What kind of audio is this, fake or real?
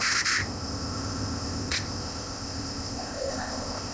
fake